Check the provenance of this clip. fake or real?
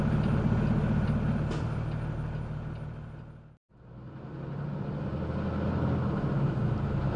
real